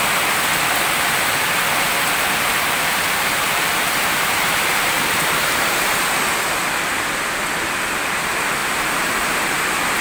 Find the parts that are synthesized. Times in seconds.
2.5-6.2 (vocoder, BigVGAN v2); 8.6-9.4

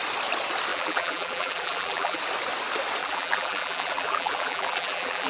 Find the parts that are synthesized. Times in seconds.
0.7-2.2 (vocoder, BigVGAN v2); 3.0-5.3

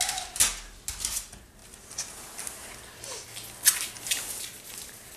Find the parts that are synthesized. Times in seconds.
none

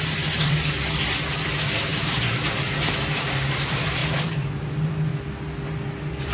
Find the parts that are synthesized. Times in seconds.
0.0-5.1 (vocoder, BigVGAN v2)

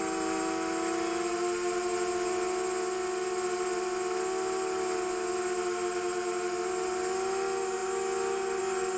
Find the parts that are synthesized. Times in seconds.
none

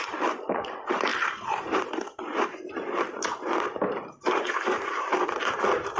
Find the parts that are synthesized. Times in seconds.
0.0-5.1 (vocoder, BigVGAN v2)

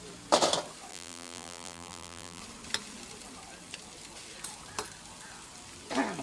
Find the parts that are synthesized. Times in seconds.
0.9-2.4 (vocoder, BigVGAN v2)